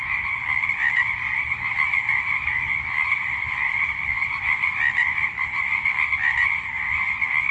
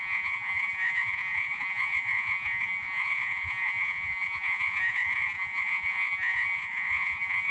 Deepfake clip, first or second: second